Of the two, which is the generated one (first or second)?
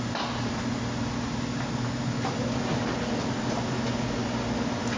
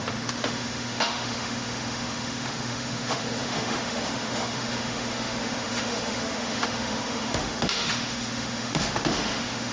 second